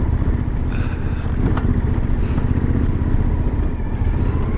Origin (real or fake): real